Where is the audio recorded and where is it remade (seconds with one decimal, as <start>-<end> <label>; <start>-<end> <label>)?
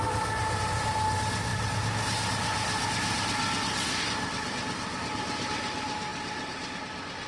0.0-7.3 recorded